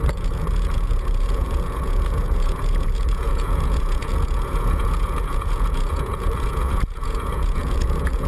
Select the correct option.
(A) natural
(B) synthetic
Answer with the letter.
B